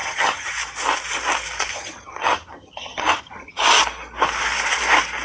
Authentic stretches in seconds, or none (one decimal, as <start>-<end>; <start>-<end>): 0.5-1.7; 3.6-5.2